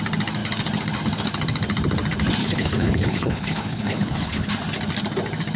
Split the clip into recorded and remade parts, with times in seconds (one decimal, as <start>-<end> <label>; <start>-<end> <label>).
0.0-2.4 recorded; 2.4-4.5 remade; 4.5-5.6 recorded